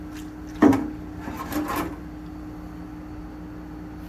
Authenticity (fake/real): real